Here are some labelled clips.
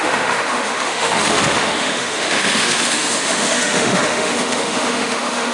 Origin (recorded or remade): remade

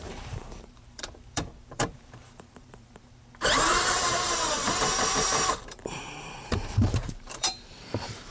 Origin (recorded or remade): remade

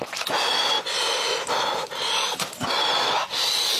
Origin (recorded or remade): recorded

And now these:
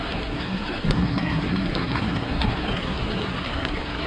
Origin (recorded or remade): remade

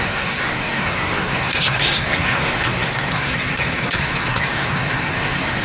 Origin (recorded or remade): remade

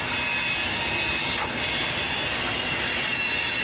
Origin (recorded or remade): recorded